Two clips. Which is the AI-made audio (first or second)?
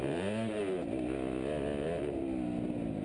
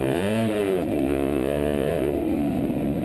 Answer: second